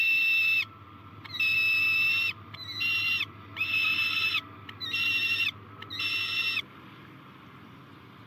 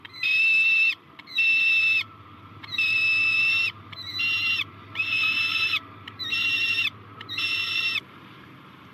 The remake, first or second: second